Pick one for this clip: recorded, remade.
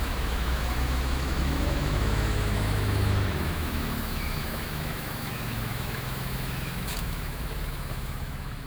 remade